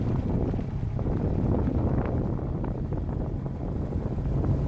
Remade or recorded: recorded